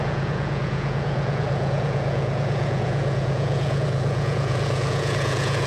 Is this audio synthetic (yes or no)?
yes